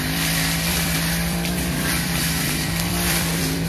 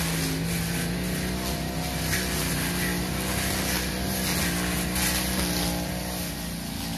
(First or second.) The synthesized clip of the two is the first